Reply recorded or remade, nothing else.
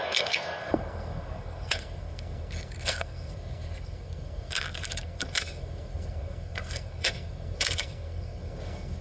remade